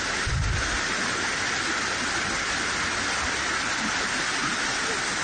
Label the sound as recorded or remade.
recorded